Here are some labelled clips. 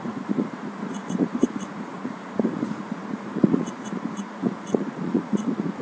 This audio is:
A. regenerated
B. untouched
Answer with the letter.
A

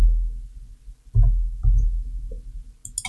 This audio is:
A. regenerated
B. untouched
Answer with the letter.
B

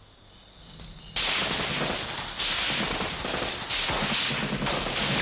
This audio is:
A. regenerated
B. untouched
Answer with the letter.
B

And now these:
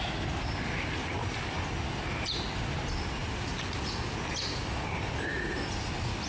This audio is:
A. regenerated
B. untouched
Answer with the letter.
B